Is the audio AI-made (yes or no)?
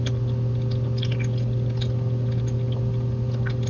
no